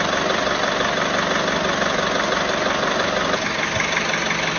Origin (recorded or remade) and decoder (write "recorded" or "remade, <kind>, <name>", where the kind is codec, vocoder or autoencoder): recorded